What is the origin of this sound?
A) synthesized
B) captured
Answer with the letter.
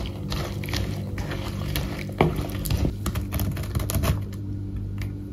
B